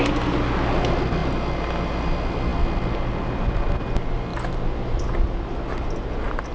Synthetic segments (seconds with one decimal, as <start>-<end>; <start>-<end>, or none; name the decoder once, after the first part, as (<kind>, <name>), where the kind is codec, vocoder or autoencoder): none